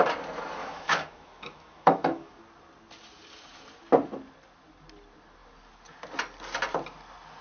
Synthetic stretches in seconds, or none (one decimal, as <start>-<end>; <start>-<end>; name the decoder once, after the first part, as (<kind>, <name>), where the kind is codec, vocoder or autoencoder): 0.6-2.4 (autoencoder, DAC-VAE)